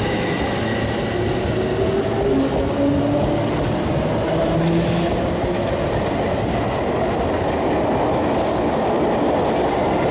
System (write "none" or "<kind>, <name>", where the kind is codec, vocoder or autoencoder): none